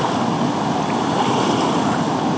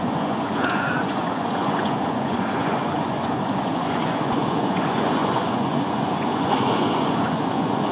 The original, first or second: first